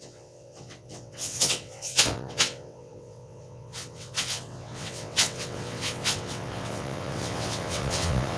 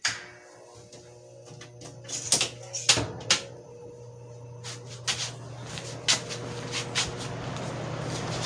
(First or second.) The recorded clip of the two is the second